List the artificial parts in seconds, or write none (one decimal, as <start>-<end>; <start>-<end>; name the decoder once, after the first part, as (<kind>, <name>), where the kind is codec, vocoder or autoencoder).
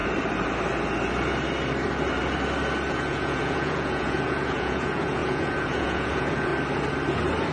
2.9-6.5 (vocoder, Vocos)